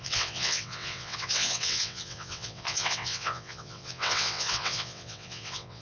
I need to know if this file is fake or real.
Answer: fake